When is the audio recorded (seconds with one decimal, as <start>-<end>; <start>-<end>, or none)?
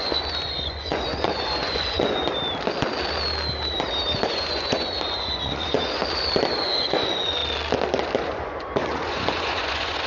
2.2-4.3; 6.0-6.6; 7.4-8.2